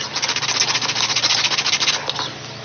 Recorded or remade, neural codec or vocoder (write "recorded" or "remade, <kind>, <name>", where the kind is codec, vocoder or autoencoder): recorded